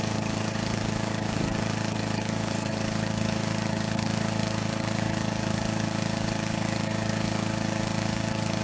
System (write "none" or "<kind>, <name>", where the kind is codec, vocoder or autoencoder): codec, DAC